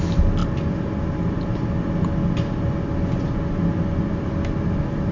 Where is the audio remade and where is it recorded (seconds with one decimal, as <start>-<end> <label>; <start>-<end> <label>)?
0.0-5.1 recorded

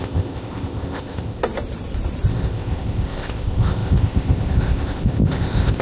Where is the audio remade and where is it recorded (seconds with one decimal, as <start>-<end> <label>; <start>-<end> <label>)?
0.0-1.4 remade; 1.4-2.3 recorded; 2.3-5.8 remade

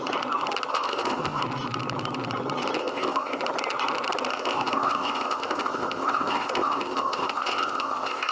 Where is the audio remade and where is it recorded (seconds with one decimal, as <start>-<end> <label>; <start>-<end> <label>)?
0.0-0.7 recorded; 0.7-1.4 remade; 1.4-2.8 recorded; 2.8-3.4 remade; 3.4-4.3 recorded; 4.3-8.3 remade

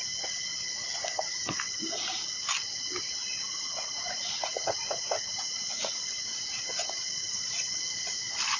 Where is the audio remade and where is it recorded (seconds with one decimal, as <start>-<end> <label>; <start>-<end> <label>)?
0.0-8.6 recorded

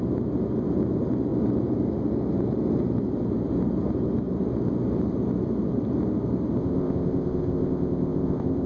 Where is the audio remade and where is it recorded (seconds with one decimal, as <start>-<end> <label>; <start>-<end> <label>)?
0.0-6.6 recorded; 6.6-8.7 remade

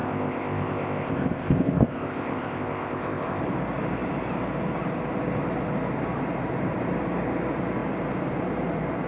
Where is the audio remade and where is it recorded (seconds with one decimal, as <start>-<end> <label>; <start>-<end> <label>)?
0.0-3.4 remade; 3.4-9.1 recorded